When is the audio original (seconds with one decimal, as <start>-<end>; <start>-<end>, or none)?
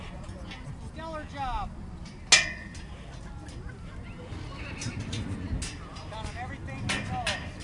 0.0-7.6